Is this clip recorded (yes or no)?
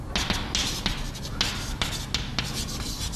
yes